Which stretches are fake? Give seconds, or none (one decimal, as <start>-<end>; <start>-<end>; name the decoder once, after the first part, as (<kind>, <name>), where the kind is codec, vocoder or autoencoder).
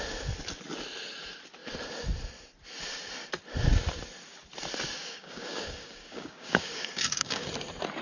5.0-7.5 (codec, DAC)